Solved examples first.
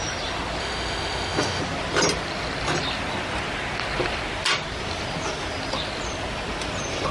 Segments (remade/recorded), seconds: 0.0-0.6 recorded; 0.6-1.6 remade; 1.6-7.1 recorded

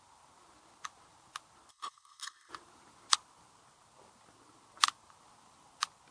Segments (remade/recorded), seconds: 0.0-1.7 recorded; 1.7-2.5 remade; 2.5-6.1 recorded

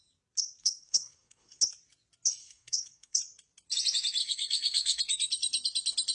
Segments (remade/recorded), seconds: 0.0-0.6 recorded; 0.6-1.6 remade; 1.6-2.4 recorded; 2.4-3.2 remade; 3.2-4.2 recorded; 4.2-5.0 remade; 5.0-6.1 recorded